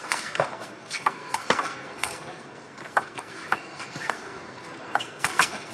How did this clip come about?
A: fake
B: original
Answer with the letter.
A